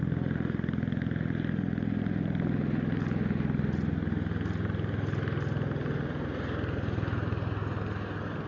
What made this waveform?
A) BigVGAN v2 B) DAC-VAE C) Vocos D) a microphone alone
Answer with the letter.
D